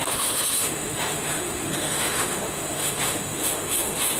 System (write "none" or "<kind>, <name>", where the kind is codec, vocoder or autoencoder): autoencoder, DAC-VAE